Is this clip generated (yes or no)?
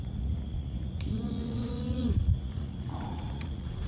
yes